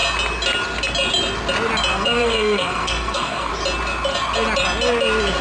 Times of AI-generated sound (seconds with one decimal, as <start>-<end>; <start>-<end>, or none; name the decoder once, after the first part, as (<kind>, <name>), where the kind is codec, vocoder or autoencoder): 1.9-3.5 (codec, SNAC)